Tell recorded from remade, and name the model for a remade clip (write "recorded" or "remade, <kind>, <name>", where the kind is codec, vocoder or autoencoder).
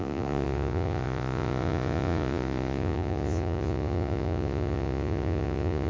remade, vocoder, Vocos